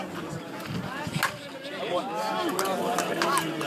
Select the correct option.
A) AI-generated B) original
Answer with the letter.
B